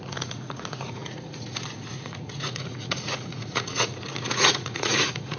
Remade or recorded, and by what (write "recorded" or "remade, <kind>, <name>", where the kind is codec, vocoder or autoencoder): remade, vocoder, Vocos